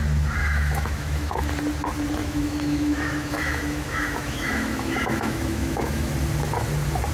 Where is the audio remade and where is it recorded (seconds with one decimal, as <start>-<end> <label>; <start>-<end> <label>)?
0.0-0.4 recorded; 0.4-1.4 remade; 1.4-2.2 recorded; 2.2-6.1 remade; 6.1-7.1 recorded